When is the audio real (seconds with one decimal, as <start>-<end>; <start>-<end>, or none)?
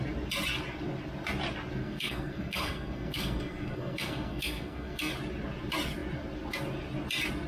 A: 0.0-1.8; 5.1-7.5